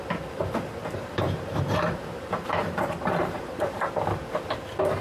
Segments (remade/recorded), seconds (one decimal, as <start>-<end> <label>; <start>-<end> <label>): 0.0-0.8 recorded; 0.8-3.8 remade; 3.8-5.0 recorded